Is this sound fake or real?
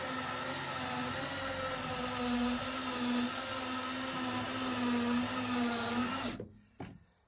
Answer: real